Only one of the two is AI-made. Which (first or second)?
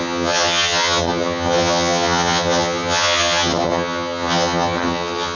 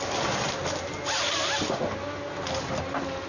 first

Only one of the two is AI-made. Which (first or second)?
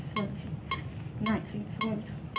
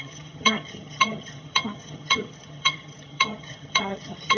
second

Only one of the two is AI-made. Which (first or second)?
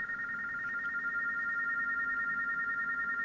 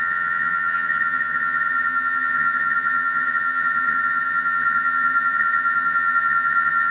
second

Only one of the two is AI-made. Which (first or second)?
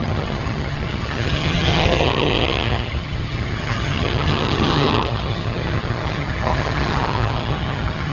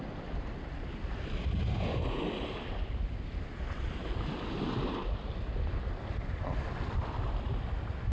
first